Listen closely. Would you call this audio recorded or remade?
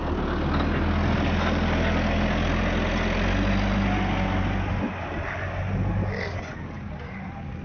recorded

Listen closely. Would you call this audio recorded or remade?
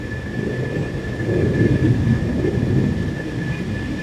recorded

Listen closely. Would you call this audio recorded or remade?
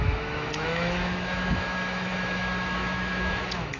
remade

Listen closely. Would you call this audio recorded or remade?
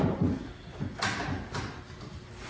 recorded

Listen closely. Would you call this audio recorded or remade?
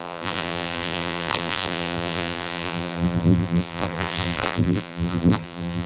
remade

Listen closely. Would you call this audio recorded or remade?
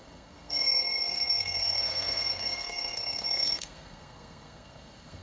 remade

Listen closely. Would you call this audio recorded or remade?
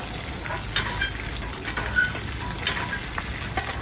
recorded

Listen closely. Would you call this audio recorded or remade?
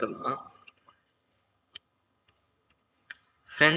remade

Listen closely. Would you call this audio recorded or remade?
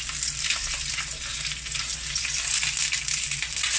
recorded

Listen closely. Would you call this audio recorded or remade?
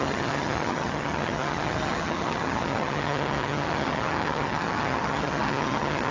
remade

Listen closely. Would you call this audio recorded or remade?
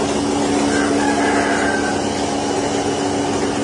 recorded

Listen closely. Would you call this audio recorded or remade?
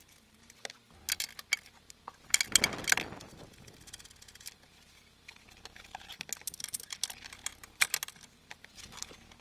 recorded